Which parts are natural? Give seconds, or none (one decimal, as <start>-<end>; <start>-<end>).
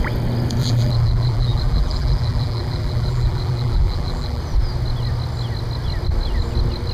0.0-0.6; 4.4-6.9